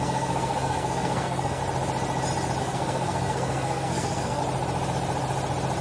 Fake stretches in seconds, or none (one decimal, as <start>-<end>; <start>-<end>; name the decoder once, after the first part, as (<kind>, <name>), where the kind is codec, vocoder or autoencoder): 0.0-1.6 (codec, SNAC); 2.6-4.4